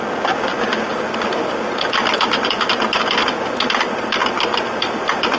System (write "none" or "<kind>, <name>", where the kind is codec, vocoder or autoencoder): none